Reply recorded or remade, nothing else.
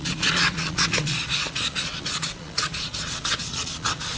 remade